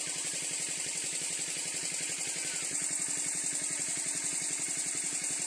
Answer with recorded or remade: recorded